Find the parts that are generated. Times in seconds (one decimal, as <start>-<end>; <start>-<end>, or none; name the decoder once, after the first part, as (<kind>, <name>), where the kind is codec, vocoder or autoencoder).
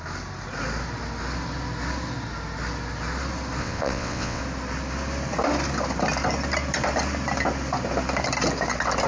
3.6-4.4 (vocoder, WaveNeXt)